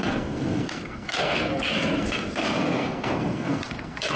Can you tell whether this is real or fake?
fake